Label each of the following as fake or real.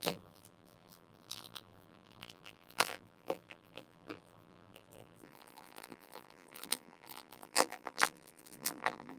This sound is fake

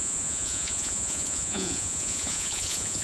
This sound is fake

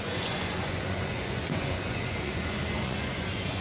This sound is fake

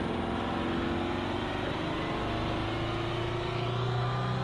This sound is real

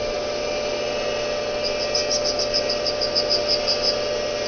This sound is real